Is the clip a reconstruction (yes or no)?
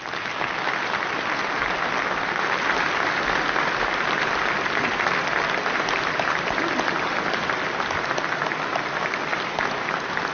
no